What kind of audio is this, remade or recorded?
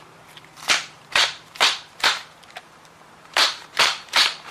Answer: remade